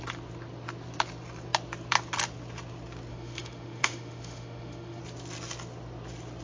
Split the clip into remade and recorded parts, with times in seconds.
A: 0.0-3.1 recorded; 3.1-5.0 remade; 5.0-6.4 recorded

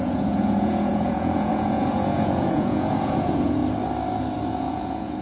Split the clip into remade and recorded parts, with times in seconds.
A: 0.0-3.6 remade; 3.6-4.5 recorded; 4.5-5.2 remade

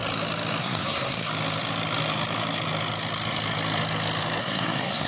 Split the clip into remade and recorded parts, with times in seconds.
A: 0.0-0.6 recorded; 0.6-1.3 remade; 1.3-4.4 recorded; 4.4-5.1 remade

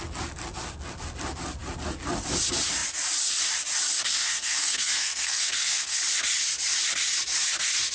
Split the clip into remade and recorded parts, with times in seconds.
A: 0.0-4.1 recorded; 4.1-6.0 remade; 6.0-7.9 recorded

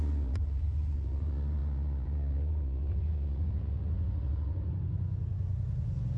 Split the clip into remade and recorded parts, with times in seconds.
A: 0.0-6.2 remade

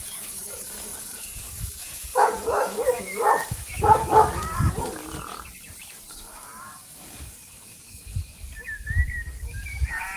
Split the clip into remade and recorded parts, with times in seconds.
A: 0.0-5.0 remade; 5.0-6.1 recorded; 6.1-10.2 remade

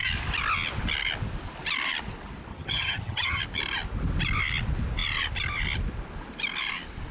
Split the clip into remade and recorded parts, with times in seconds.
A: 0.0-2.5 recorded; 2.5-3.4 remade; 3.4-7.1 recorded

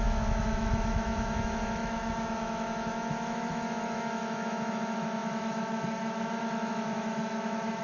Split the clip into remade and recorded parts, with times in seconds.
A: 0.0-7.8 remade